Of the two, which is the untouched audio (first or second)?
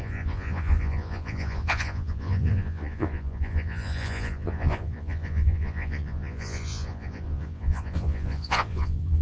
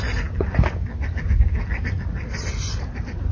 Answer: second